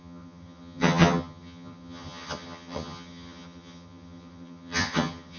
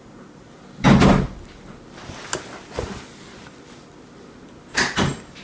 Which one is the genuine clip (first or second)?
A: second